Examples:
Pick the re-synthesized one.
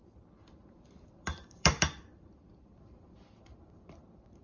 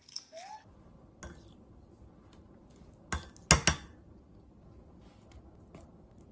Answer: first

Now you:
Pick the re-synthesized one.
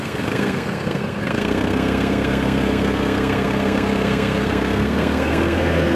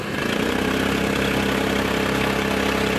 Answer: first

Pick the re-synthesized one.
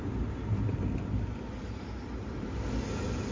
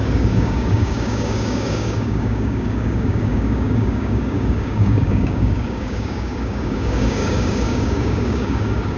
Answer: second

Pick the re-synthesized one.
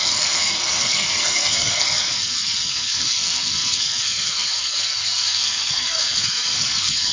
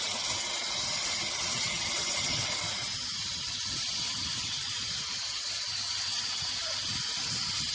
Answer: first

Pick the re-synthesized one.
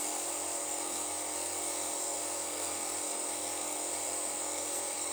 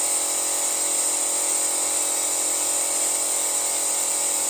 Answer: first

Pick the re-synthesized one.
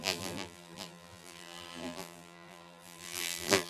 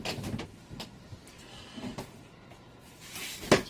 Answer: first